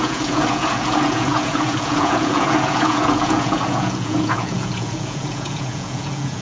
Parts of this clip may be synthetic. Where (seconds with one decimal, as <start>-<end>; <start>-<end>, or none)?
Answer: 0.0-6.4